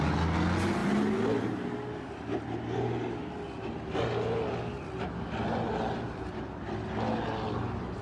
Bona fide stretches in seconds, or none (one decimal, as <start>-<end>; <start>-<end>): 0.0-8.0